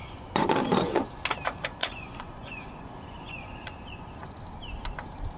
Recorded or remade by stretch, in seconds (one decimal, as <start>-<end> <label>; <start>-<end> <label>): 0.0-1.2 remade; 1.2-1.8 recorded; 1.8-4.4 remade; 4.4-5.4 recorded